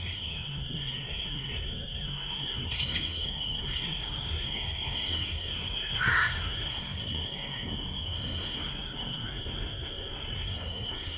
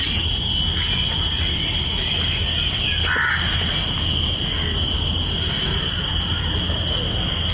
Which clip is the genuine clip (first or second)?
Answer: second